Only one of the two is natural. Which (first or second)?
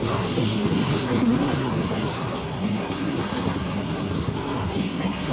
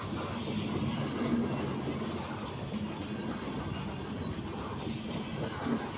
second